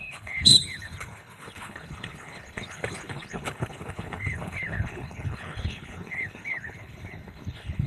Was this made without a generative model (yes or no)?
no